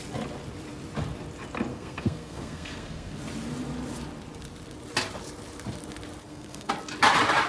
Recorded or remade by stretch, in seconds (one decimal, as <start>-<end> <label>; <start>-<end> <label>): 0.0-1.7 recorded; 1.7-3.2 remade; 3.2-6.2 recorded; 6.2-6.7 remade; 6.7-7.5 recorded